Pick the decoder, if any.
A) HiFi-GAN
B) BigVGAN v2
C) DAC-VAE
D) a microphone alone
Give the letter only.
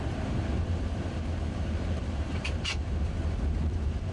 B